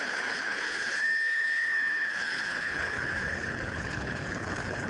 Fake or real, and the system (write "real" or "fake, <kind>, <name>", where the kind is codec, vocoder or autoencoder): fake, codec, HILCodec